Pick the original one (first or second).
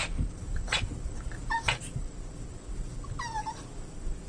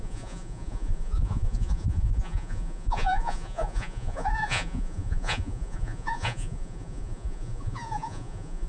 first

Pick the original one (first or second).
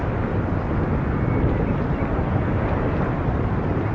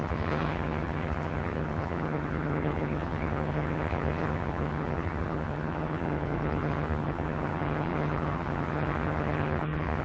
first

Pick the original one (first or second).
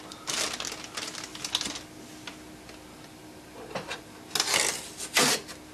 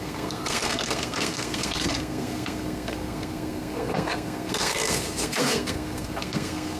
first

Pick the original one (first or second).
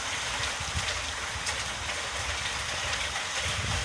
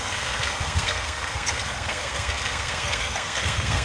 first